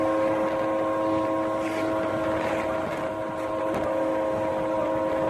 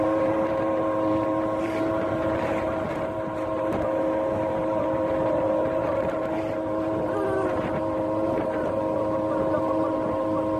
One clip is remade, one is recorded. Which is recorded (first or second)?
first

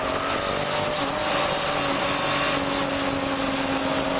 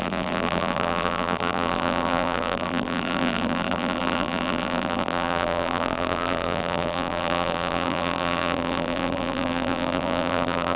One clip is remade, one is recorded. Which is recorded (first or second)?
first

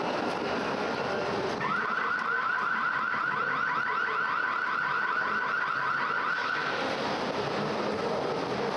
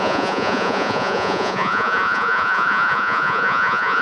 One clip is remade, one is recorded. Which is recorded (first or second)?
first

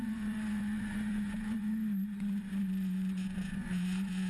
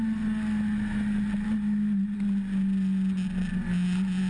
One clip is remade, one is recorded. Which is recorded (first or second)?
second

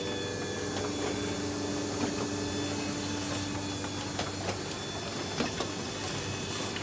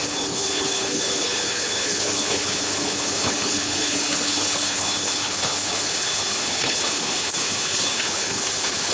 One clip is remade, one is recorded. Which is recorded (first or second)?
first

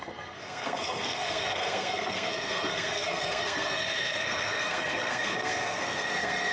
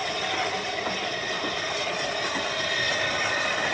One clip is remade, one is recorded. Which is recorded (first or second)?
second